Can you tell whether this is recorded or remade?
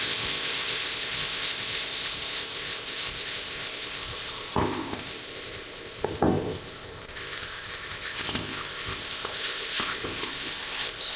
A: remade